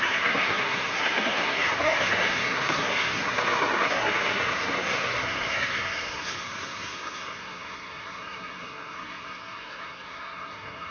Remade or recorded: remade